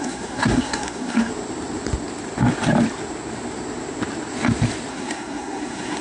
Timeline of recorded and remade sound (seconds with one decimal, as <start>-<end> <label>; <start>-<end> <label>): 0.0-1.3 remade; 1.3-4.9 recorded; 4.9-6.0 remade